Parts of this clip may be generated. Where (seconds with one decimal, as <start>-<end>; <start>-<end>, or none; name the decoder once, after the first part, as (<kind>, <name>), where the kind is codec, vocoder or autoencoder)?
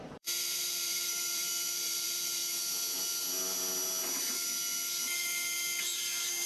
0.0-2.4 (vocoder, BigVGAN v2); 5.1-6.5